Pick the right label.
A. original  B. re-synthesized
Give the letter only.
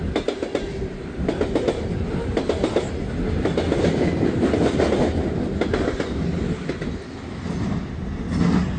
A